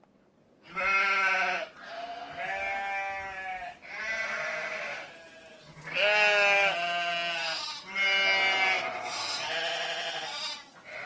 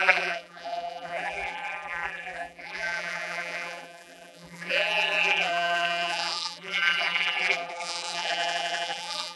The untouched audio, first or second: first